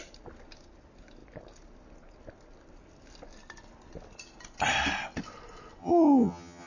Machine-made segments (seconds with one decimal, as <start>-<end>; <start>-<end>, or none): 5.8-6.7

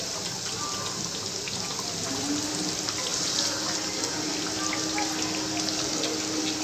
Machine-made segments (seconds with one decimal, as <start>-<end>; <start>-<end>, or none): none

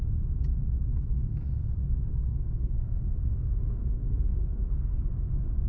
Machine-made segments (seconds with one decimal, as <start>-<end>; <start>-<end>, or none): 0.9-1.6; 2.3-5.3

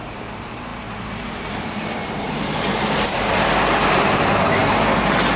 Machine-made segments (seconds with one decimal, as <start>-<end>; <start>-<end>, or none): 0.0-4.6

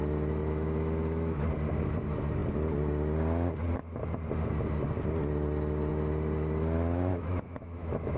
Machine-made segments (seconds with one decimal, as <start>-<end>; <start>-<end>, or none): 0.4-1.5; 7.1-8.2

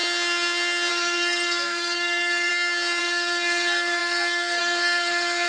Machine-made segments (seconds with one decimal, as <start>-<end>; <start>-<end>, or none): 0.9-2.5; 3.0-5.5